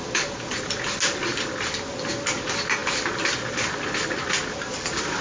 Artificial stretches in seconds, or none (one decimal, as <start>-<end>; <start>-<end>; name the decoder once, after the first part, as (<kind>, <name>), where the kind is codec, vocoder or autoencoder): 0.0-0.8 (vocoder, BigVGAN v2)